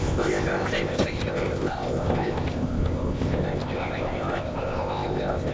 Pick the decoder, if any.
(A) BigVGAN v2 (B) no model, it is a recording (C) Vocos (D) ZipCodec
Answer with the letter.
D